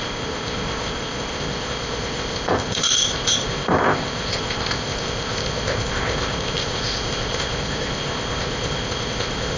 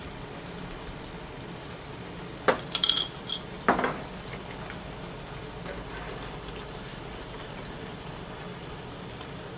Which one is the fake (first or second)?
first